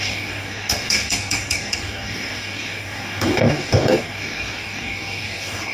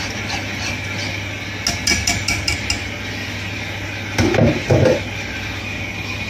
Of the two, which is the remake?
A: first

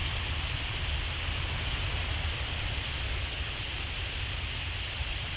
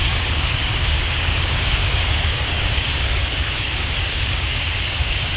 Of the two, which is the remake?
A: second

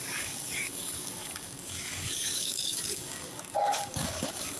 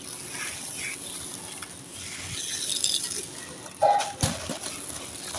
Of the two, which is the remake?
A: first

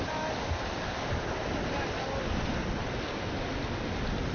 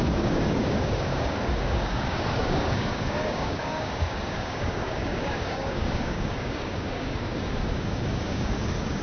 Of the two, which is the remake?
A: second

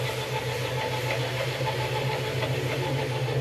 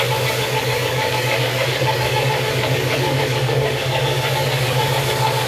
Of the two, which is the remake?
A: second